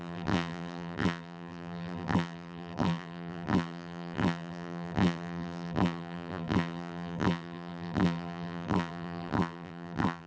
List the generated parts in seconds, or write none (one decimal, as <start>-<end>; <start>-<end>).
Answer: 0.0-10.3